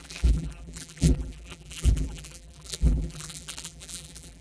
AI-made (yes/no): yes